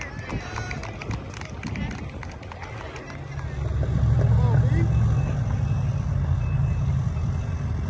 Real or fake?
real